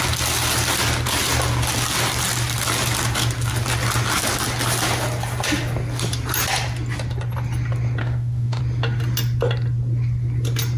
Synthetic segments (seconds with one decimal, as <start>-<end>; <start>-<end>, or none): 8.0-8.6